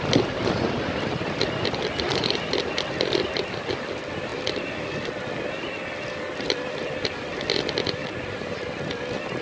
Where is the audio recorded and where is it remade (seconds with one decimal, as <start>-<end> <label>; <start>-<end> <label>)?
0.0-2.1 recorded; 2.1-2.6 remade; 2.6-9.4 recorded